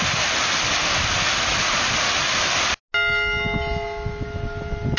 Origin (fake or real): real